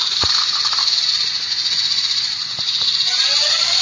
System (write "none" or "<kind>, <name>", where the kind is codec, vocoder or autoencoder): vocoder, BigVGAN v2